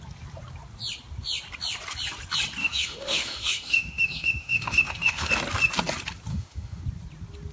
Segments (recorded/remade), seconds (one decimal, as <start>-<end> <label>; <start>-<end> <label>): 0.0-2.6 recorded; 2.6-5.3 remade; 5.3-6.3 recorded; 6.3-6.8 remade; 6.8-7.5 recorded